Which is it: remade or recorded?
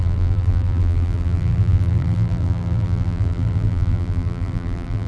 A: remade